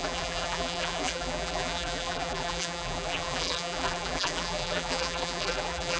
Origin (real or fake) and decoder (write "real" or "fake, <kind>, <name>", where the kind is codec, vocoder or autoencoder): fake, vocoder, BigVGAN v2